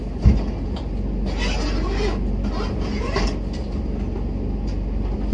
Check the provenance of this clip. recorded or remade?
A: recorded